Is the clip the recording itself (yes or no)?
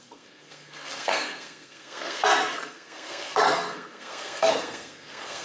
no